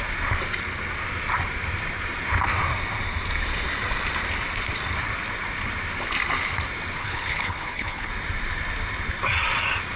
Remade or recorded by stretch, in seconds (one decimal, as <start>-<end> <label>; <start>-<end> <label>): 0.0-7.0 recorded; 7.0-8.1 remade; 8.1-10.0 recorded